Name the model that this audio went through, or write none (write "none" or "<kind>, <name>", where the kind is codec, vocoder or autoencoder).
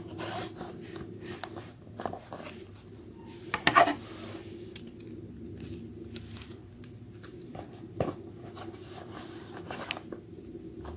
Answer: none